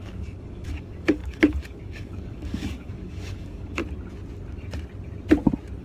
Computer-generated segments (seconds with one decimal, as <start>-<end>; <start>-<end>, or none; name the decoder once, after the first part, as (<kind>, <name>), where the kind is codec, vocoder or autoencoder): 0.0-3.8 (codec, DAC)